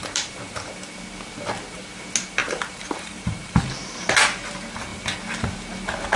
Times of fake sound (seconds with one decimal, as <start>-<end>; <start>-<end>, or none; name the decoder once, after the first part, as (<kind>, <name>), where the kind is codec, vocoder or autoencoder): 0.0-0.7 (vocoder, BigVGAN v2); 2.4-3.6